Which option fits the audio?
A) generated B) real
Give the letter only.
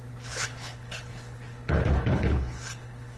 A